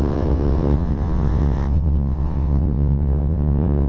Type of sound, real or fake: fake